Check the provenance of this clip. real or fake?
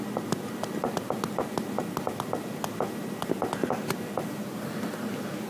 real